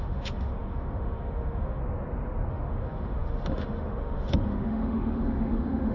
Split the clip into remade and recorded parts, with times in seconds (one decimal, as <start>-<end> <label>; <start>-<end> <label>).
0.0-1.8 remade; 1.8-2.5 recorded; 2.5-5.9 remade